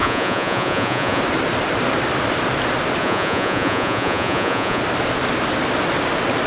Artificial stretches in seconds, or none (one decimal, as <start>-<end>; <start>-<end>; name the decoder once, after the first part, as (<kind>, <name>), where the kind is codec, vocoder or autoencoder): 0.0-1.2 (vocoder, Vocos); 3.0-4.8